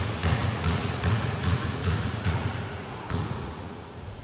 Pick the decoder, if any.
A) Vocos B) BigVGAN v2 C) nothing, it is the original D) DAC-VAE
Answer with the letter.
A